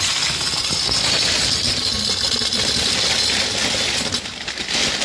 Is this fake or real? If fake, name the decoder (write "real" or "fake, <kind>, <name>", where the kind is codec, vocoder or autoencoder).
real